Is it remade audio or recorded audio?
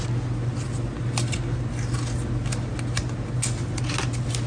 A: recorded